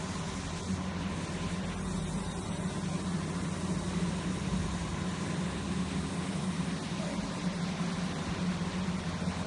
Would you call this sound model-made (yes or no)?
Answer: no